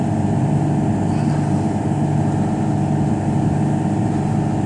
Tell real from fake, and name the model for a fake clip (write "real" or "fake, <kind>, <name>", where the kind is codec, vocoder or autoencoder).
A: real